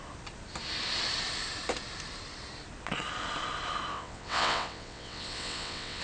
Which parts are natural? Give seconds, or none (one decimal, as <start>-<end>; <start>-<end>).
0.0-3.9